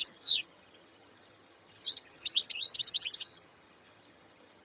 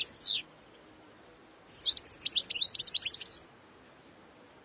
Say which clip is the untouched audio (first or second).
second